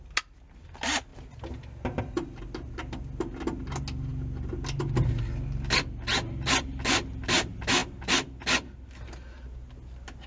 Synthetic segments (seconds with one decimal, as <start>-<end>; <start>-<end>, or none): none